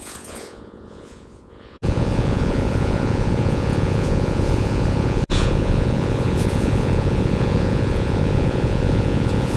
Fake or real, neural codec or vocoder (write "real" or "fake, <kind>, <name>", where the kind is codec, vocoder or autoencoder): fake, vocoder, Vocos